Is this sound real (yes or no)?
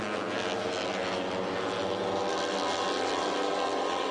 yes